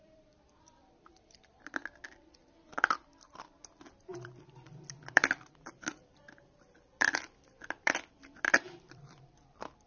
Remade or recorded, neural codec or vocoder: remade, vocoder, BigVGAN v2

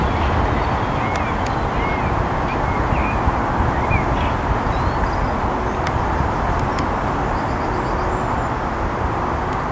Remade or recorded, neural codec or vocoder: recorded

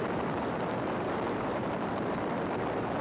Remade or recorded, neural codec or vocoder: remade, vocoder, BigVGAN v2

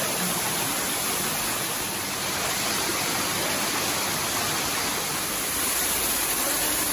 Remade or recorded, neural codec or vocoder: recorded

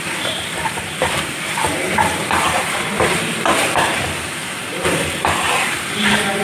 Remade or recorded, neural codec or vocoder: remade, vocoder, BigVGAN v2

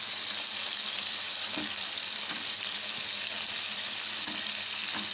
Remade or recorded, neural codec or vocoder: recorded